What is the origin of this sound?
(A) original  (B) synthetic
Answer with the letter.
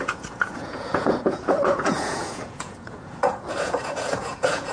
B